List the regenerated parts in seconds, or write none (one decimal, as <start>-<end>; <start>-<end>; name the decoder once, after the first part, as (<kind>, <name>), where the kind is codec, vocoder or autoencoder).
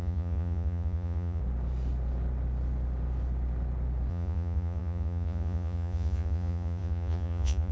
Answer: 0.0-1.4 (vocoder, Vocos); 4.1-7.7